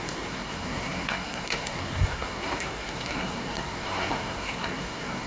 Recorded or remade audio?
remade